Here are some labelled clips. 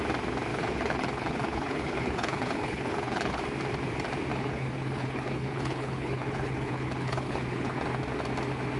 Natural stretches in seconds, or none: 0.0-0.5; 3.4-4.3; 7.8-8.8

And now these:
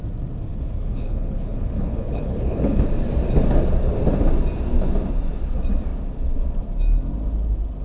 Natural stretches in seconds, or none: 0.0-0.5; 2.9-7.8

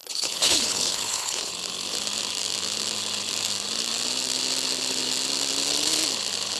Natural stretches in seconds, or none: 1.5-6.6

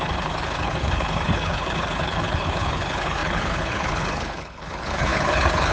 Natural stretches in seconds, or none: none